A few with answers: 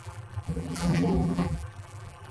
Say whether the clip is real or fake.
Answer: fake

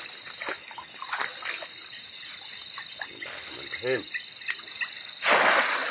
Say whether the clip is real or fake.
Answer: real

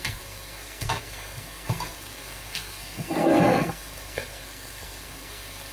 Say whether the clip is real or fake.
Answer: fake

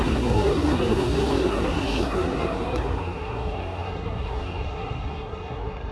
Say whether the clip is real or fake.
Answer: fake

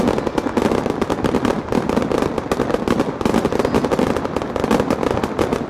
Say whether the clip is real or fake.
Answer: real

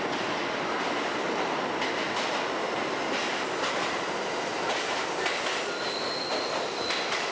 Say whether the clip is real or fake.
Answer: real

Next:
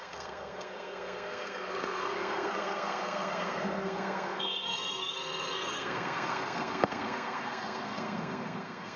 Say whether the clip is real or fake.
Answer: fake